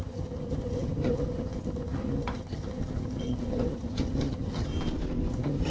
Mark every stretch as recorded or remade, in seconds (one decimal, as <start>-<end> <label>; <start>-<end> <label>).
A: 0.0-4.7 remade; 4.7-5.3 recorded; 5.3-5.7 remade